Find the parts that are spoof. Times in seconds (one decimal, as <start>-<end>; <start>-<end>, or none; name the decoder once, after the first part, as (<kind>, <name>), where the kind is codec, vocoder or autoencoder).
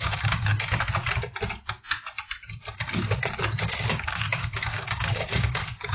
0.0-0.5 (codec, DAC); 3.8-5.9